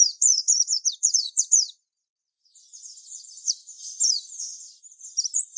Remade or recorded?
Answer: remade